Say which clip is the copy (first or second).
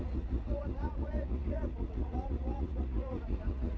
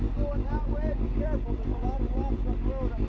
first